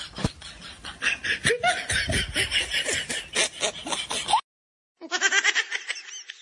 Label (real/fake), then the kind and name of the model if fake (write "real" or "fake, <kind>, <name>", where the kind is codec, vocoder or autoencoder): real